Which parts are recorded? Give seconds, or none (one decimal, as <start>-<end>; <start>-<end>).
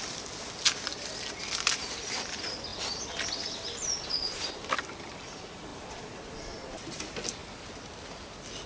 0.0-8.7